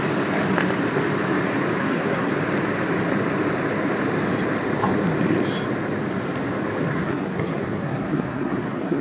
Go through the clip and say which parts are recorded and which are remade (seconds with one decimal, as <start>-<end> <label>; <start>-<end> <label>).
0.0-1.8 recorded; 1.8-2.3 remade; 2.3-6.9 recorded; 6.9-9.0 remade